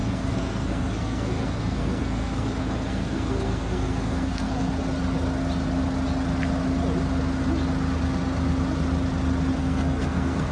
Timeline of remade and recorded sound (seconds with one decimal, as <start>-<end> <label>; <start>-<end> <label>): 0.0-4.7 remade; 4.7-9.6 recorded; 9.6-10.5 remade